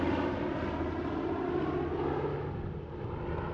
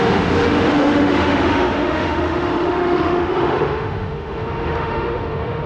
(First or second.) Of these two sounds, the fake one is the second